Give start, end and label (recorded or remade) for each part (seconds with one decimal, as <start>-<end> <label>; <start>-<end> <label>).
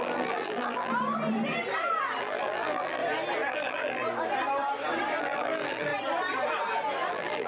0.0-0.9 remade; 0.9-2.2 recorded; 2.2-3.0 remade; 3.0-3.5 recorded; 3.5-4.0 remade; 4.0-5.2 recorded; 5.2-5.9 remade; 5.9-7.1 recorded; 7.1-7.5 remade